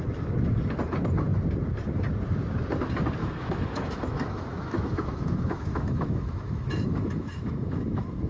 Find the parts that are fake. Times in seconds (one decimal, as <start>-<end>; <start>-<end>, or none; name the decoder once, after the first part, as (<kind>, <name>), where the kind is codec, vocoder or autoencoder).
3.2-8.3 (autoencoder, DAC-VAE)